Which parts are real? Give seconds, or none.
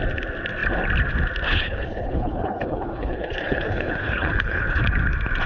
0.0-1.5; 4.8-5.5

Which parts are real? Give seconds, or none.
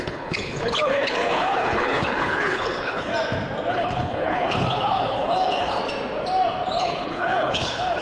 3.1-3.7; 5.8-6.8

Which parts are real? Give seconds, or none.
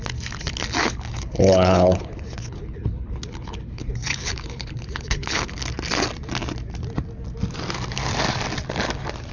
0.0-0.8; 5.5-9.3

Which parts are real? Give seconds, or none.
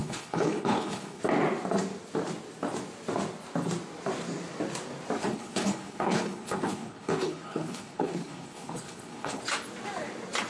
1.2-5.2; 9.4-10.5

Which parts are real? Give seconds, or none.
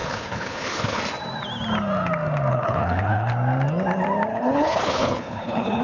1.0-2.5; 3.3-4.3